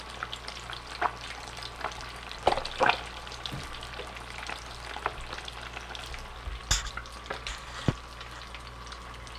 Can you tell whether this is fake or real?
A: real